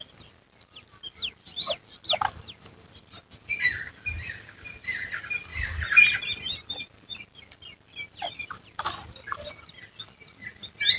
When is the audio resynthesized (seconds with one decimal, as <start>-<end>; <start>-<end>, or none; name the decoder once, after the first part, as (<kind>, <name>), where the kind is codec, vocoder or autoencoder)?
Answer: none

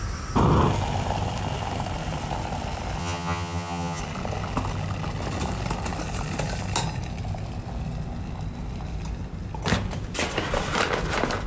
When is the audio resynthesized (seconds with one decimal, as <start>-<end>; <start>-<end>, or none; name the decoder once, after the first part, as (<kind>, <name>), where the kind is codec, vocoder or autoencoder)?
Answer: 3.0-4.0 (vocoder, HiFi-GAN)

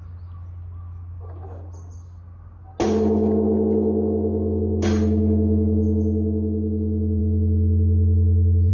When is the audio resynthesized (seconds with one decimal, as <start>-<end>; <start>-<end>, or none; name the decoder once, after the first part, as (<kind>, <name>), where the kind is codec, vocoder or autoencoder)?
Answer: none

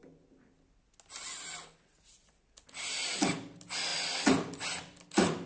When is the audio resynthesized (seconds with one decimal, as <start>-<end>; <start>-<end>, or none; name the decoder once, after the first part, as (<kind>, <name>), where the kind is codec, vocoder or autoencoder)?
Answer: none

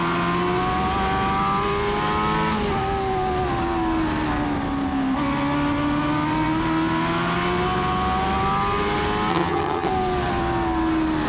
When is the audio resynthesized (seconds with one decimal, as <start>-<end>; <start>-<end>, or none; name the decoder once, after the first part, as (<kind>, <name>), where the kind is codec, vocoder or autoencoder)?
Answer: 9.3-9.9 (vocoder, HiFi-GAN)

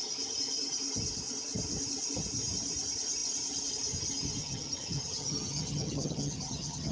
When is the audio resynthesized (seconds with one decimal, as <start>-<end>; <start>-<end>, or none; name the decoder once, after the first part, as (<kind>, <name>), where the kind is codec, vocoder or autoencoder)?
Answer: 4.4-6.9 (vocoder, HiFi-GAN)